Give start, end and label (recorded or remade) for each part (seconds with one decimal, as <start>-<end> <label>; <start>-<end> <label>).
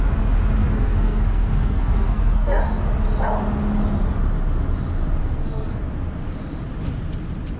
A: 0.0-0.6 recorded; 0.6-2.6 remade; 2.6-5.2 recorded; 5.2-5.8 remade; 5.8-7.6 recorded